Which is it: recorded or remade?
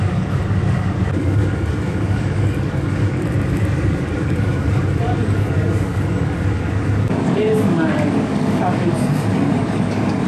remade